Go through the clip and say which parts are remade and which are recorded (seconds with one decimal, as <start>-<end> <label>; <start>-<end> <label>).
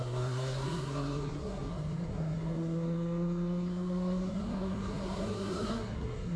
0.0-6.4 remade